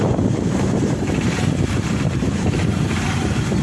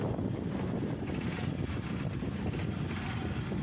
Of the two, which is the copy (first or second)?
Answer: first